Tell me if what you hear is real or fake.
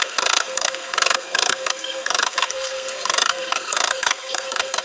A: fake